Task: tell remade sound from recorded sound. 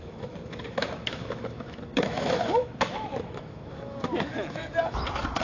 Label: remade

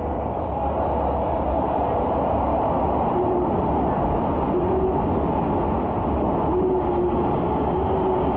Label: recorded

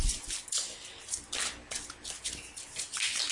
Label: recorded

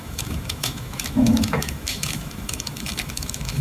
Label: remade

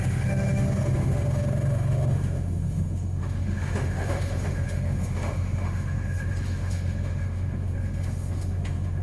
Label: remade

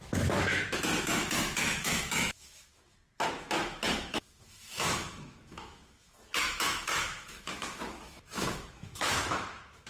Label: remade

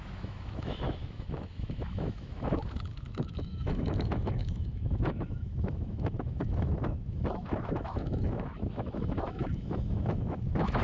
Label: remade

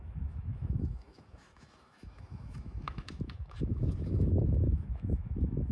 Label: remade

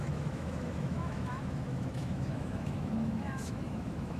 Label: remade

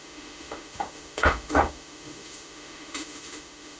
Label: remade